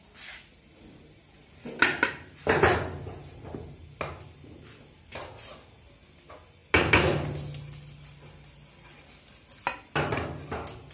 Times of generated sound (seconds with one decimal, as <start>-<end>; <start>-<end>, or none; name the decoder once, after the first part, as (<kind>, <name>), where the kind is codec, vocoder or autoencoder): none